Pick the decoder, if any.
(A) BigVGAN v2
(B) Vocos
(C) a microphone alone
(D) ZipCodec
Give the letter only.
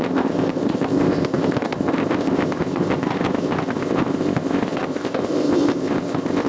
D